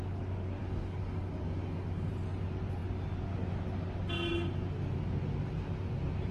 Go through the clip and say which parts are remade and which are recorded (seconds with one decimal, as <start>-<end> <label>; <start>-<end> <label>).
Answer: 0.0-0.6 recorded; 0.6-2.1 remade; 2.1-6.3 recorded